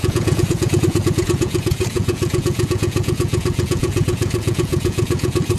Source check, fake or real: fake